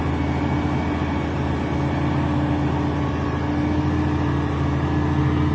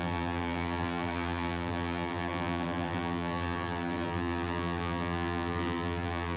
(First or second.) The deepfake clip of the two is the second